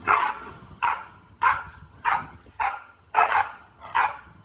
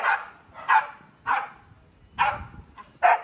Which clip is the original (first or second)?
second